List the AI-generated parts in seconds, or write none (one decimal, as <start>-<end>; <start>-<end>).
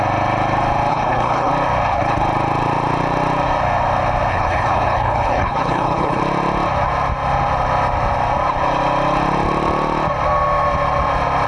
0.9-1.5; 4.3-6.2